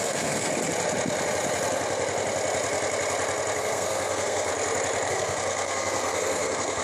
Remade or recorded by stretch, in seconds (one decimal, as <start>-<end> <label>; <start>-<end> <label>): 0.0-0.5 remade; 0.5-3.6 recorded; 3.6-4.5 remade; 4.5-5.1 recorded; 5.1-6.8 remade